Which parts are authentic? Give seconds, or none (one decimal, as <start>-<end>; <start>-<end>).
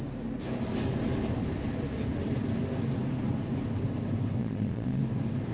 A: 0.0-4.4; 5.0-5.5